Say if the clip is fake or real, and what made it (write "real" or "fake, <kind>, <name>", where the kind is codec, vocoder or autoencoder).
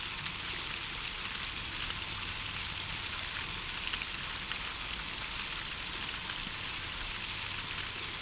real